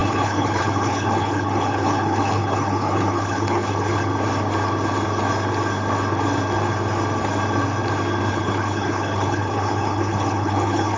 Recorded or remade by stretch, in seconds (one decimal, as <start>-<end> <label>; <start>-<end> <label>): 0.0-4.1 remade; 4.1-8.3 recorded; 8.3-11.0 remade